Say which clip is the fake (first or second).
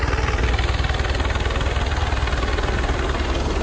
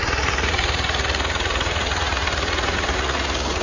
second